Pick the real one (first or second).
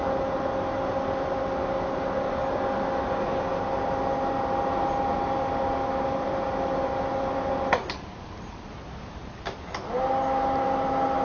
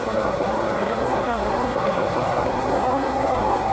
first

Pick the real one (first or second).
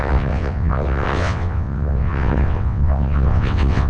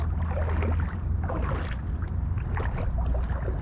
second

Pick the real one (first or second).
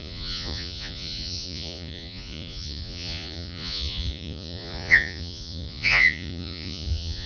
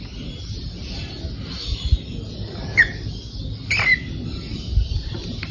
second